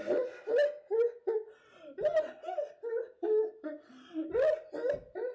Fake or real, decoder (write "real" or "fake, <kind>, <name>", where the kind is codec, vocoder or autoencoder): real